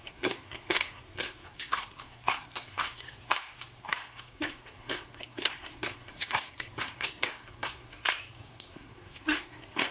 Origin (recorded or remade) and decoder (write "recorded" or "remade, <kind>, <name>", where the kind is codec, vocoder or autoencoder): remade, codec, SNAC